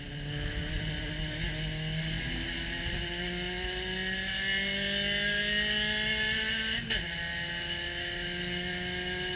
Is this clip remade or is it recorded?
recorded